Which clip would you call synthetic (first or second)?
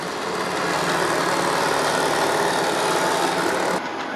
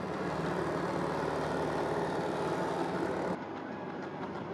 second